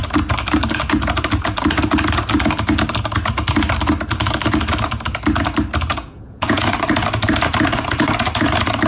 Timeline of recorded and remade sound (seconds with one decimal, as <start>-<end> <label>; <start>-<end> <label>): 0.0-5.9 recorded; 5.9-6.7 remade; 6.7-8.9 recorded